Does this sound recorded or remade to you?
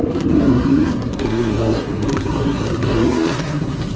remade